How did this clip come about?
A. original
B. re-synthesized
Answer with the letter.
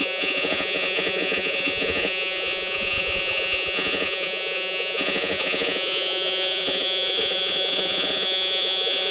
B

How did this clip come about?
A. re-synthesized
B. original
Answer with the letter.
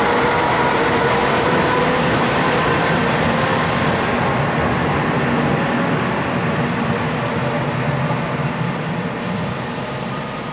B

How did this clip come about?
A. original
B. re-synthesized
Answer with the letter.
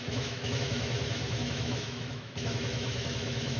B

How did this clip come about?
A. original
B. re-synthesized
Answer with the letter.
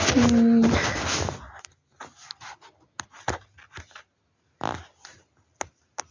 A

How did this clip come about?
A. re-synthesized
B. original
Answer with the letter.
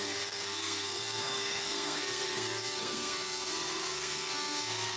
A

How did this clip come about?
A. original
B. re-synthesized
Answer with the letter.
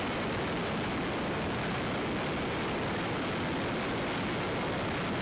A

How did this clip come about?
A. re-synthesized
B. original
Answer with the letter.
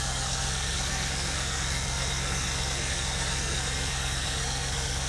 A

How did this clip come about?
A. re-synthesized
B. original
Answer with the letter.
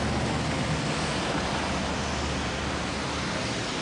B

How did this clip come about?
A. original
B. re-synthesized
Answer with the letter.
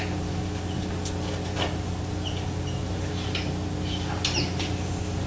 A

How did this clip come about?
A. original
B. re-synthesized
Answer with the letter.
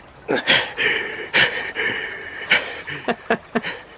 A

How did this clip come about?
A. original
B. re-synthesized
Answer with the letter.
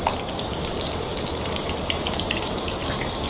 B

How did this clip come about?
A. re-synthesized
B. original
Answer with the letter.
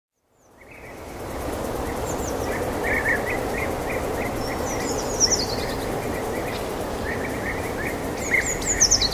B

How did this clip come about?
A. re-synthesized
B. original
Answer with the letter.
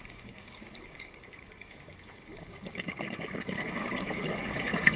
A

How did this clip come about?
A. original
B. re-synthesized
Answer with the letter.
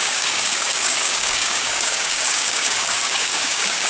B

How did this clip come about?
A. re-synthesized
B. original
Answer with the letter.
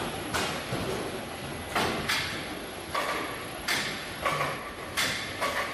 B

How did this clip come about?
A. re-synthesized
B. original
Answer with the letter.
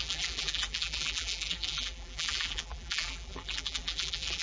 A